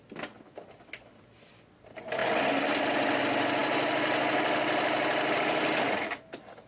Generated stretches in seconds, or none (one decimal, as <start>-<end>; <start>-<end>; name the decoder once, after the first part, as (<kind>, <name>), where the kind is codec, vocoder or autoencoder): none